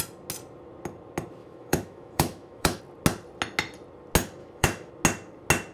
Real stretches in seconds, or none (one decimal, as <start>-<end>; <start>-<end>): 0.0-1.4; 2.8-4.4; 4.9-5.7

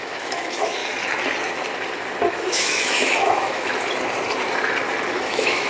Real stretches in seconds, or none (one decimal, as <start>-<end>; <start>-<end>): 0.8-2.3; 3.7-5.1